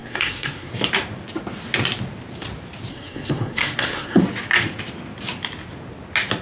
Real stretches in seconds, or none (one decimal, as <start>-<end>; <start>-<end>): 0.7-2.9; 4.2-6.4